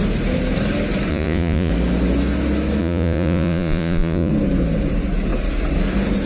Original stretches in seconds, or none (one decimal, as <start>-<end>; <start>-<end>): 0.0-1.1; 1.7-2.8; 4.3-6.3